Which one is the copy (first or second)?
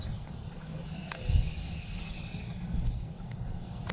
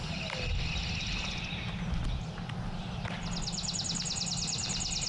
first